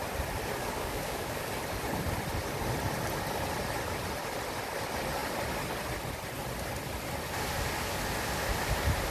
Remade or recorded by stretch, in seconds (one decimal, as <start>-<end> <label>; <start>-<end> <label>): 0.0-0.6 recorded; 0.6-1.5 remade; 1.5-9.1 recorded